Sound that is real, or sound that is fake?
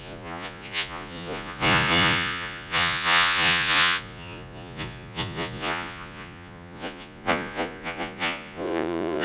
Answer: fake